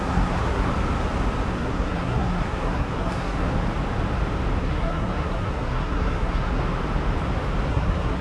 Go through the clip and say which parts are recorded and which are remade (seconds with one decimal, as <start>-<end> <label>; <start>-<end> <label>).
0.0-0.7 remade; 0.7-1.5 recorded; 1.5-3.5 remade; 3.5-4.6 recorded; 4.6-6.6 remade; 6.6-7.7 recorded; 7.7-8.2 remade